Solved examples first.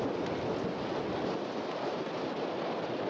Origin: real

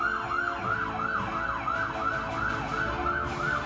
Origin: real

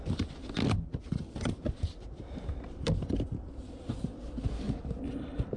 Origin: real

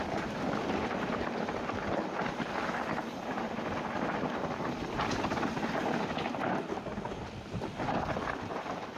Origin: real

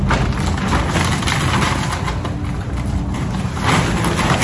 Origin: real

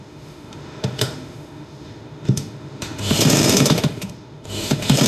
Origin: fake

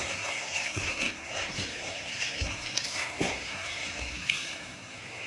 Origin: fake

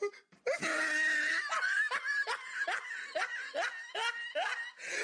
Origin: real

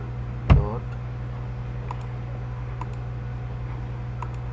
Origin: real